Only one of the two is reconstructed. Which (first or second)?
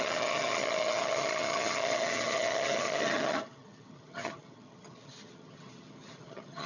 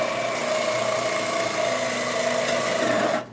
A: first